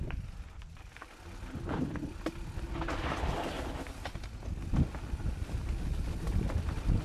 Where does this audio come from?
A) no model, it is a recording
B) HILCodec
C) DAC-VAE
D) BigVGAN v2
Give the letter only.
A